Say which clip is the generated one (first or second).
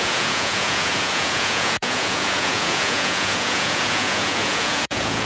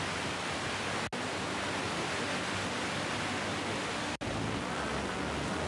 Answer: first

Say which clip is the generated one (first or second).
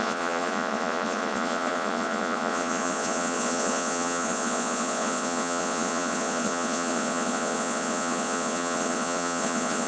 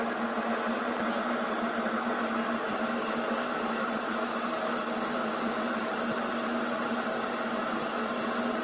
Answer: first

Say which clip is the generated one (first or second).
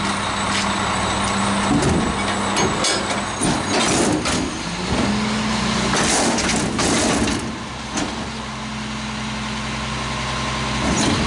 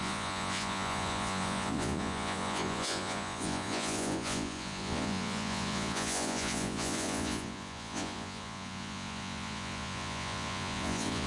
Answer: second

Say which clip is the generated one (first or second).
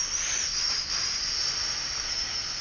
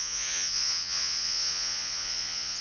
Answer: second